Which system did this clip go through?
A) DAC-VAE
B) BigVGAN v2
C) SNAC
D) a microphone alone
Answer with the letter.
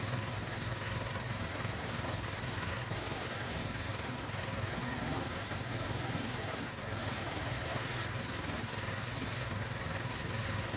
C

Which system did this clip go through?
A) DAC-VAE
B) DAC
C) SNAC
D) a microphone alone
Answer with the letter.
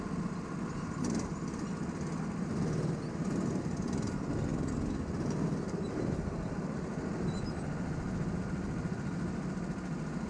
D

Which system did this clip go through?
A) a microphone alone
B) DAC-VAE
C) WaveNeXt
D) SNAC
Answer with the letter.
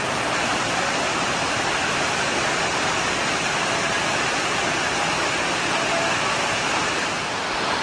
A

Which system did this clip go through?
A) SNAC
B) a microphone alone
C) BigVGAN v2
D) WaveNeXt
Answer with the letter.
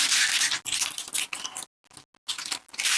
B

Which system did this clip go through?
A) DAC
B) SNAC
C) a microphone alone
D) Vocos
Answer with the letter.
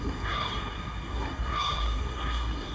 B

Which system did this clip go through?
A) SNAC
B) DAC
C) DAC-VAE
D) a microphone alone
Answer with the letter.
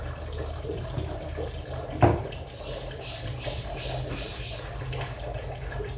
D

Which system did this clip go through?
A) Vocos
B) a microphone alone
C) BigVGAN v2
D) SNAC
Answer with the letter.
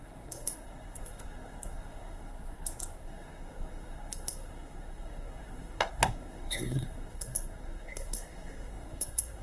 D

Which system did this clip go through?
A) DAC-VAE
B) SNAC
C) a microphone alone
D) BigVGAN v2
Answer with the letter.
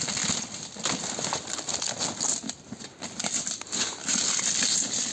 C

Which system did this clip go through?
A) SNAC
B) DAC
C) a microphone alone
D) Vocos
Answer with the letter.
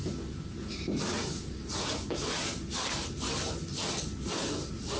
C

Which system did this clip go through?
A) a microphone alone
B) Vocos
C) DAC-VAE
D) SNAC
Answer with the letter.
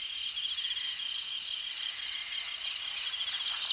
A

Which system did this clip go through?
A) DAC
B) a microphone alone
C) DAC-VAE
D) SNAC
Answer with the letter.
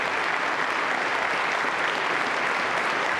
B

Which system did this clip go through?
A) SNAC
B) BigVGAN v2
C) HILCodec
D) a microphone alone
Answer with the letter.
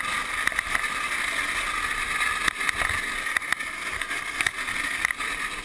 D